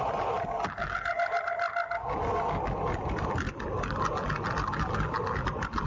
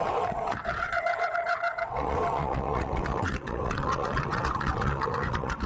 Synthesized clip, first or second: second